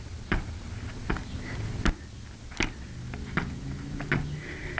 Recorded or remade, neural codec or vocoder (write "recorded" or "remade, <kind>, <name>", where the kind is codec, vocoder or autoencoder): recorded